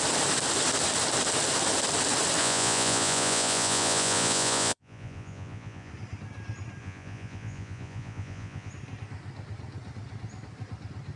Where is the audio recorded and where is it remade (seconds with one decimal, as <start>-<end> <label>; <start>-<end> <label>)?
0.0-2.4 recorded; 2.4-5.9 remade; 5.9-6.8 recorded; 6.8-8.7 remade; 8.7-11.2 recorded